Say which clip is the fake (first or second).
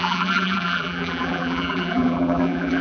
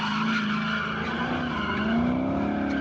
first